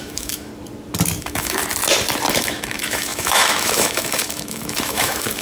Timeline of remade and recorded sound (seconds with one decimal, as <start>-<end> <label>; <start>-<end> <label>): 0.0-0.5 remade; 0.5-1.2 recorded; 1.2-1.6 remade; 1.6-2.3 recorded; 2.3-5.4 remade